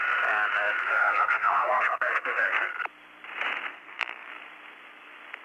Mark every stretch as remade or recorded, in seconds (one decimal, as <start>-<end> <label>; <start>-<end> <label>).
0.0-0.8 recorded; 0.8-2.7 remade; 2.7-3.7 recorded; 3.7-4.3 remade; 4.3-5.4 recorded